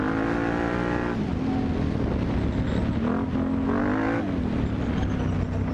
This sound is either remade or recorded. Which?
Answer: recorded